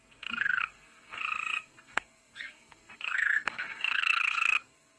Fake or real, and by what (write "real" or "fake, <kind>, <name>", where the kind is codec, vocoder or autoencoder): fake, codec, SNAC